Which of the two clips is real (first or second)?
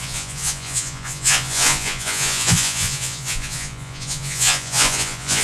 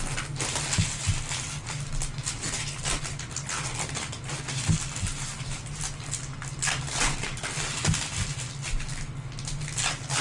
second